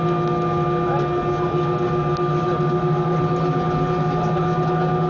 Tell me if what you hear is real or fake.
real